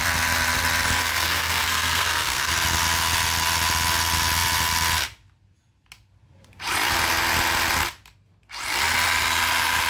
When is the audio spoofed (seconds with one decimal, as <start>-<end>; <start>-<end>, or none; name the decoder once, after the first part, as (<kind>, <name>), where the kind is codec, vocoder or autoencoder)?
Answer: 1.0-2.5 (codec, SNAC)